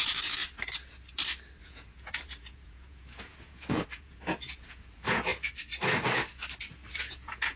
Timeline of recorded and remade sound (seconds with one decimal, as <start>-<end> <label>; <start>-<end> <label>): 0.0-0.4 remade; 0.4-1.6 recorded; 1.6-5.3 remade; 5.3-7.0 recorded; 7.0-7.6 remade